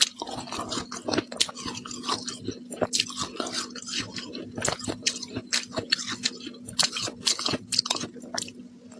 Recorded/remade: recorded